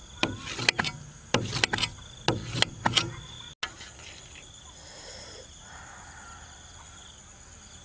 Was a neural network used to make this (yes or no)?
no